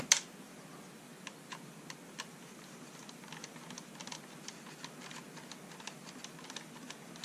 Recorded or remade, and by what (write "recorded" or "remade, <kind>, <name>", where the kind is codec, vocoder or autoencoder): recorded